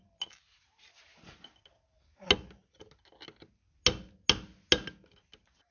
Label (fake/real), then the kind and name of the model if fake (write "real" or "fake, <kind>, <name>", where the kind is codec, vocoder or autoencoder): real